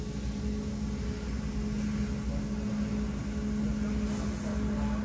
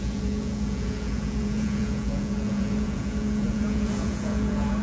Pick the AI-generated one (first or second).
second